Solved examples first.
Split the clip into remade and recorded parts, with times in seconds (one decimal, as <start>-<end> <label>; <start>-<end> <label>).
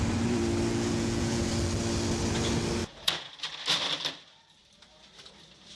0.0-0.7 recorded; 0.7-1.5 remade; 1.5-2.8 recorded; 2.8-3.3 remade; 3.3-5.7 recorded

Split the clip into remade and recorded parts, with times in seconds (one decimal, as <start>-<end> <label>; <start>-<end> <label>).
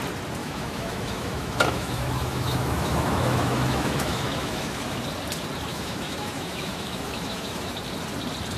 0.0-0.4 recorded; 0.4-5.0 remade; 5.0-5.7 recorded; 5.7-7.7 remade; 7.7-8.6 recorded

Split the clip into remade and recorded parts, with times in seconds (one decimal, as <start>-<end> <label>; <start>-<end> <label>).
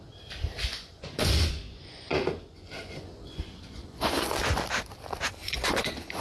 0.0-0.7 recorded; 0.7-4.4 remade; 4.4-5.4 recorded; 5.4-6.2 remade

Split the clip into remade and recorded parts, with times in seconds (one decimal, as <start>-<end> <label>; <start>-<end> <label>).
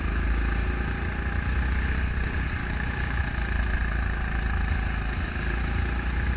0.0-2.6 recorded; 2.6-3.2 remade; 3.2-6.4 recorded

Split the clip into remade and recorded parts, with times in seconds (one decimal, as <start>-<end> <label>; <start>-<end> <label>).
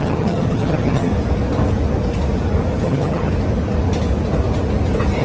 0.0-1.1 remade; 1.1-2.8 recorded; 2.8-3.3 remade; 3.3-5.2 recorded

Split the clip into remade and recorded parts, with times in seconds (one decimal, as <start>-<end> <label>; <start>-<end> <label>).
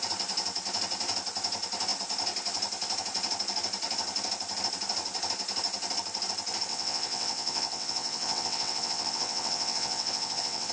0.0-6.7 recorded; 6.7-10.7 remade